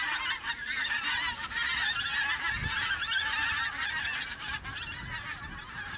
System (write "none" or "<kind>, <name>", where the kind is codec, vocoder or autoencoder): none